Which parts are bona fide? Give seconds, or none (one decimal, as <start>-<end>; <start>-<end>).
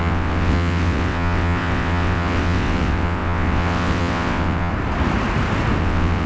4.7-5.8